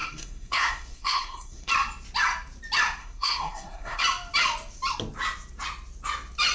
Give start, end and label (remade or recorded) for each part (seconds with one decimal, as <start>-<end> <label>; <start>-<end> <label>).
0.0-1.7 remade; 1.7-3.0 recorded; 3.0-4.0 remade; 4.0-6.5 recorded